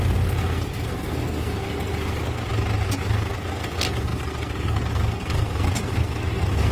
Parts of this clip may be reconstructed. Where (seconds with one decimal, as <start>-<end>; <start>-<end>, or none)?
0.0-2.5; 3.0-6.7